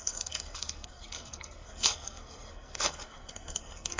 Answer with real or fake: fake